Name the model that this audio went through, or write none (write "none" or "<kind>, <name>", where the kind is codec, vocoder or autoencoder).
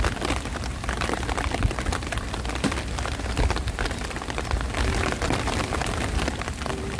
none